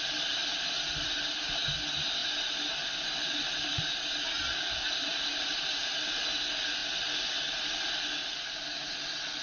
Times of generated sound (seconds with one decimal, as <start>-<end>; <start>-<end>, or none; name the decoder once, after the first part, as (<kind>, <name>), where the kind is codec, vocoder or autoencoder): 2.2-4.1 (vocoder, BigVGAN v2); 5.1-6.3